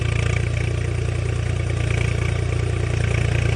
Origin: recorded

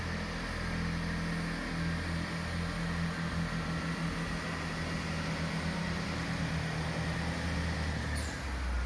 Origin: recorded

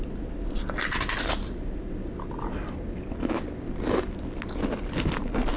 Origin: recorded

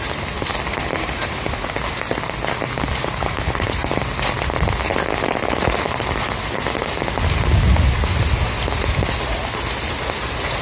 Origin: recorded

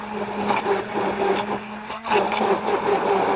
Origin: recorded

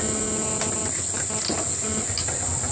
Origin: recorded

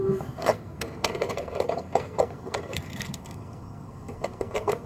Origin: remade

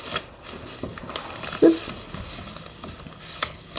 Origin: recorded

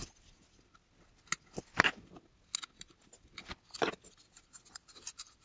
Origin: recorded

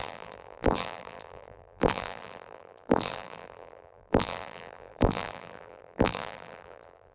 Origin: remade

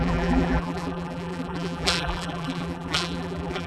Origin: remade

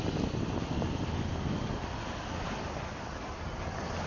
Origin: recorded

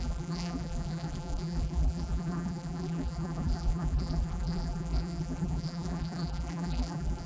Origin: remade